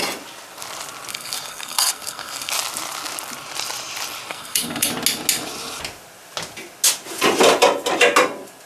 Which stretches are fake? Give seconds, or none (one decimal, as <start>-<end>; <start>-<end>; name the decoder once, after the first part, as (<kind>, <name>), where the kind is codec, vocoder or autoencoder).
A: 1.1-2.5 (codec, SNAC); 4.3-4.9